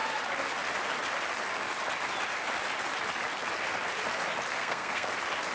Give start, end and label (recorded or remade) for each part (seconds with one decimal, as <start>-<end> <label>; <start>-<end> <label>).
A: 0.0-4.5 recorded; 4.5-5.1 remade; 5.1-5.5 recorded